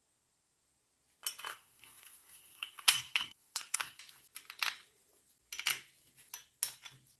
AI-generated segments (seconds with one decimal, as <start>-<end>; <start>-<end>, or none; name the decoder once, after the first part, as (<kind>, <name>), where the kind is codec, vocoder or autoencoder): 1.5-4.0 (codec, SNAC)